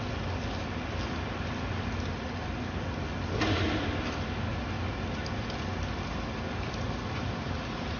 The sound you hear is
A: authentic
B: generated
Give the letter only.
A